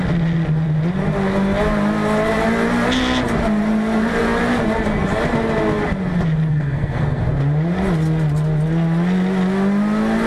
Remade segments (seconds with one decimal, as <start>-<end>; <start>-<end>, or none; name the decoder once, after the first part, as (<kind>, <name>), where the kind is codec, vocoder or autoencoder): 6.5-7.2 (codec, SNAC)